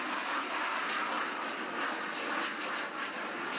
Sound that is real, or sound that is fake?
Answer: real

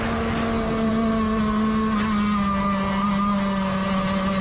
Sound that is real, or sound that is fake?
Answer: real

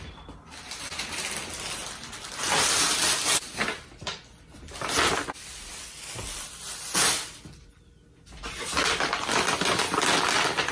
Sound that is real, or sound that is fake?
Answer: real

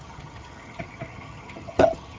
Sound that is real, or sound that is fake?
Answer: fake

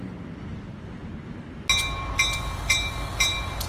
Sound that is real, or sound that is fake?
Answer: real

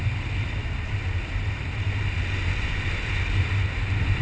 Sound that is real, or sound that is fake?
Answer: real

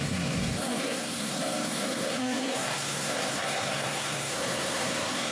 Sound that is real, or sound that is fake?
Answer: fake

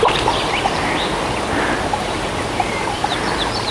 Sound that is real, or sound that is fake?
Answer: real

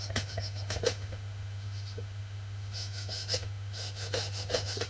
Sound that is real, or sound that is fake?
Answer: fake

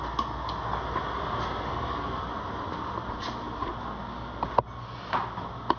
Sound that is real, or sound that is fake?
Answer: real